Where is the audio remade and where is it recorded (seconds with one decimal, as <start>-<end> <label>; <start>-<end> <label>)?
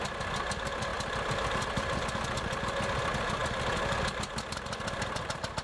0.0-0.9 recorded; 0.9-2.3 remade; 2.3-5.6 recorded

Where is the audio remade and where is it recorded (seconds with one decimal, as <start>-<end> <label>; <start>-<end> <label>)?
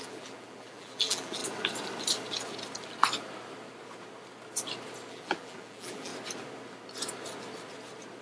0.0-1.4 remade; 1.4-5.1 recorded; 5.1-6.1 remade; 6.1-8.2 recorded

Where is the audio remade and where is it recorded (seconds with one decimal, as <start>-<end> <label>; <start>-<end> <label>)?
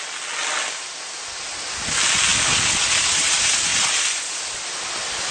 0.0-5.3 recorded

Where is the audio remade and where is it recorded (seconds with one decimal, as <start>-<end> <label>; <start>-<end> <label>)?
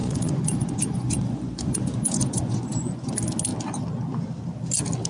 0.0-3.1 remade; 3.1-5.1 recorded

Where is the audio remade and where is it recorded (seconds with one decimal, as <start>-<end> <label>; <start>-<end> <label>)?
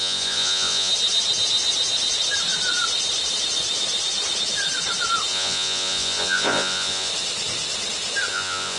0.0-0.9 remade; 0.9-5.3 recorded; 5.3-7.1 remade; 7.1-8.3 recorded; 8.3-8.8 remade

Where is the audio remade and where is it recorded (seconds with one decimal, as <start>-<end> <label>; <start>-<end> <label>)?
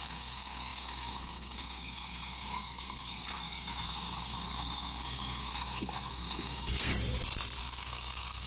0.0-6.9 remade; 6.9-7.6 recorded; 7.6-8.5 remade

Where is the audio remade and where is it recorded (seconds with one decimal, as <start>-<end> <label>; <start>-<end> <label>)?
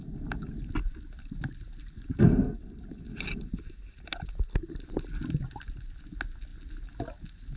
0.0-7.6 recorded